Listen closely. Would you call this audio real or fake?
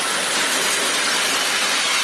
real